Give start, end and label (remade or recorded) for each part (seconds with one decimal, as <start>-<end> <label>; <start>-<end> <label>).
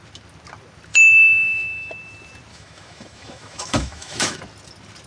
0.0-0.9 recorded; 0.9-1.9 remade; 1.9-2.5 recorded; 2.5-4.4 remade; 4.4-5.1 recorded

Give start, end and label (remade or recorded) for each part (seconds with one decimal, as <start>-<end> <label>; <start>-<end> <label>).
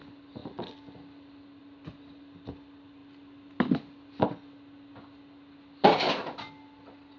0.0-7.2 recorded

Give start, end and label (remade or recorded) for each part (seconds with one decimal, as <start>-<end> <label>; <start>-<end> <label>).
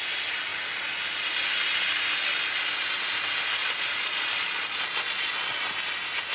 0.0-3.6 recorded; 3.6-5.6 remade; 5.6-6.3 recorded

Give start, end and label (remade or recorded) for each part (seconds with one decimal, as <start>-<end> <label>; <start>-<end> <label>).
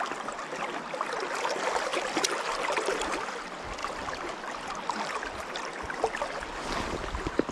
0.0-7.5 recorded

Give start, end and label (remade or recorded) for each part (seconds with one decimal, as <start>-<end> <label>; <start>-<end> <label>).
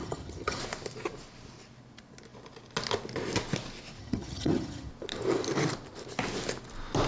0.0-0.6 remade; 0.6-4.0 recorded; 4.0-4.9 remade; 4.9-7.1 recorded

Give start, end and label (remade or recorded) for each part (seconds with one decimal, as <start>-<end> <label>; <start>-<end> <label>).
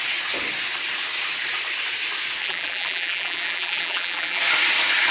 0.0-2.4 recorded; 2.4-4.4 remade; 4.4-5.1 recorded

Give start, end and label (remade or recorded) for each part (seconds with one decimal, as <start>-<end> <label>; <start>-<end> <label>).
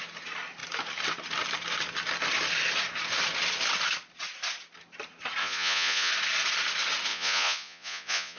0.0-5.4 recorded; 5.4-6.1 remade; 6.1-7.1 recorded; 7.1-8.4 remade